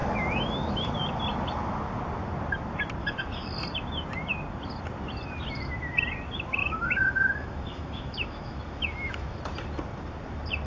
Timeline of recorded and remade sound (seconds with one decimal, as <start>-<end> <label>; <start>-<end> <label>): 0.0-0.9 remade; 0.9-6.6 recorded; 6.6-9.4 remade; 9.4-10.7 recorded

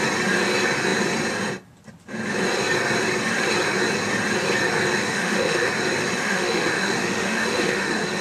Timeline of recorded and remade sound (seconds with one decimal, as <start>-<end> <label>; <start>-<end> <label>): 0.0-5.0 recorded; 5.0-5.7 remade; 5.7-6.2 recorded; 6.2-8.2 remade

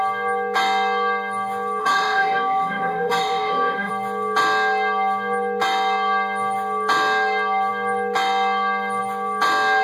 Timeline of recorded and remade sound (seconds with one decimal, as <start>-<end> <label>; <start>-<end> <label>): 0.0-1.8 recorded; 1.8-3.9 remade; 3.9-9.8 recorded

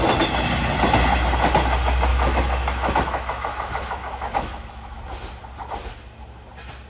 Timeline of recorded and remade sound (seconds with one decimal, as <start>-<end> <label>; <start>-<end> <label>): 0.0-2.1 recorded; 2.1-5.0 remade; 5.0-6.9 recorded

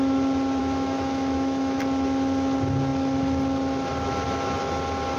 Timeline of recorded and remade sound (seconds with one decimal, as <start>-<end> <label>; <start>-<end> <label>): 0.0-0.6 recorded; 0.6-1.8 remade; 1.8-5.2 recorded

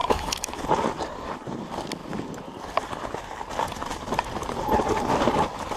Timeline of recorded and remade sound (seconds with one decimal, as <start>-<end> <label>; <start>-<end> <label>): 0.0-0.6 remade; 0.6-5.8 recorded

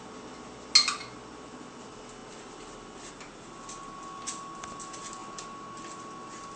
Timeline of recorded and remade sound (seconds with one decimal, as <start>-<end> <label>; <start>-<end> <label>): 0.0-6.6 recorded

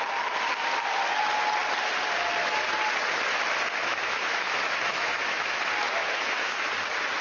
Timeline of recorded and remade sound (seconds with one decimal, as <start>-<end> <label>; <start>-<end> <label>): 0.0-3.8 recorded; 3.8-5.6 remade; 5.6-6.0 recorded; 6.0-6.7 remade; 6.7-7.2 recorded